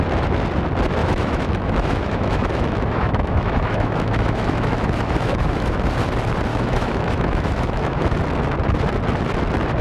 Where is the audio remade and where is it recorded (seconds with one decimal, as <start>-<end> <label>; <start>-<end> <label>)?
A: 0.0-1.0 recorded; 1.0-5.9 remade; 5.9-6.5 recorded; 6.5-8.1 remade; 8.1-9.8 recorded